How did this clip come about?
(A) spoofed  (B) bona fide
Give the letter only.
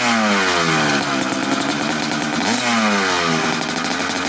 B